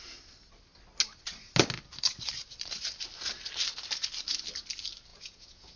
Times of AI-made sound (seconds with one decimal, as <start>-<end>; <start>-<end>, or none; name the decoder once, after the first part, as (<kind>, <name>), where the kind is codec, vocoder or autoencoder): 5.1-5.8 (vocoder, Vocos)